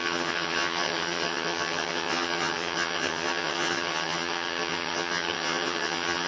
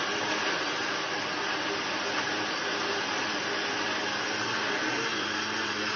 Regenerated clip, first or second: first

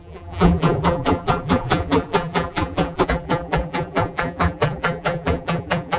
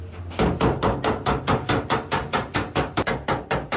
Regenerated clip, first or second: first